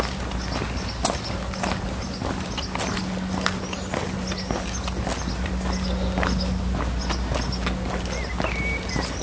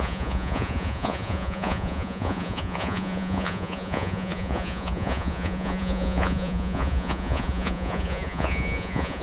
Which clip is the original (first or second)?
first